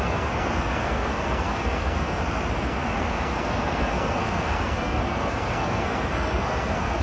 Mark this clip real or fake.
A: fake